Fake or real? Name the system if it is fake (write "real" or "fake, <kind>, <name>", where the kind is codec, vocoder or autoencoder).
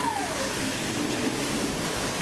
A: fake, codec, DAC